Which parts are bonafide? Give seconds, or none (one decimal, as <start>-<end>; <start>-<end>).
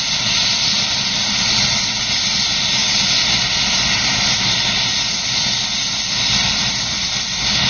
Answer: 0.0-7.7